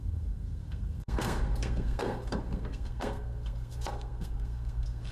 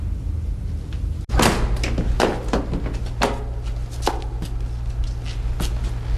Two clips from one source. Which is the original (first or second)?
second